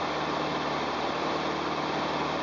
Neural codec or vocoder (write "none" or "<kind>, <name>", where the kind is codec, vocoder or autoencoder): vocoder, BigVGAN v2